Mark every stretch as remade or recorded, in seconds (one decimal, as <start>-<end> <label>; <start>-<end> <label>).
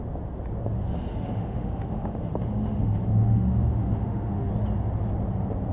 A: 0.0-1.1 recorded; 1.1-4.5 remade; 4.5-5.7 recorded